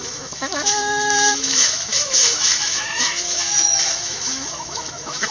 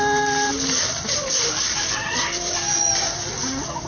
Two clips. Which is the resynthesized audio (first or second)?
first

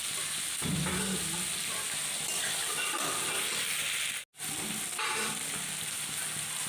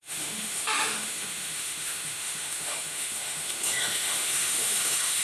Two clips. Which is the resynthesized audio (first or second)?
second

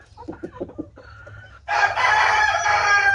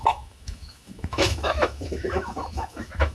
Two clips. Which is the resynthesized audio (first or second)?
second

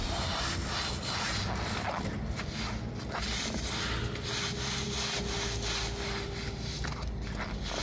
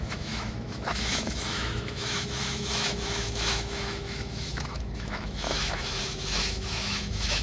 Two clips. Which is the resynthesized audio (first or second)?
second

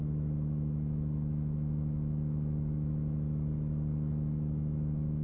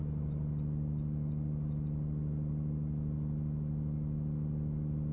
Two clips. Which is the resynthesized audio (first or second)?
first